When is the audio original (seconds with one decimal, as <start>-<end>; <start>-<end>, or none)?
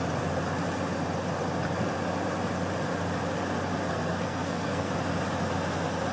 0.0-3.9; 4.9-6.1